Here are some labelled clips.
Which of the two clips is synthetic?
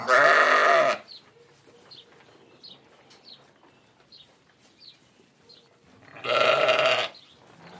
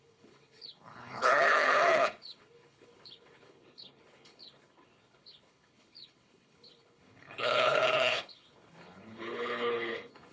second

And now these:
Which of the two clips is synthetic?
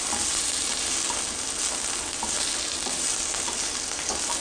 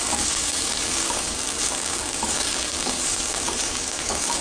second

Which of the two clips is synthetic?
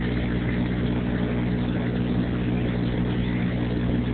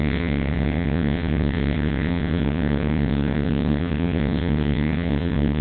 second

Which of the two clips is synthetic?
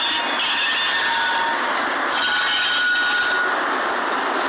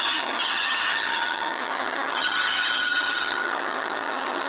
second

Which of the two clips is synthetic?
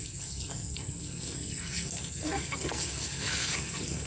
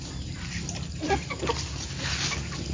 first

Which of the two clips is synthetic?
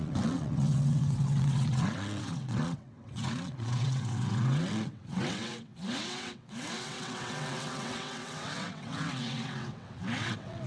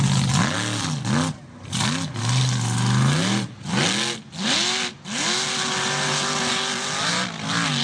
first